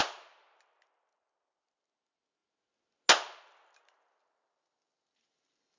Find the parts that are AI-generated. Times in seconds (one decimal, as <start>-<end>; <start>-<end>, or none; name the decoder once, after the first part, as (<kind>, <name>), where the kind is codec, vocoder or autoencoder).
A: none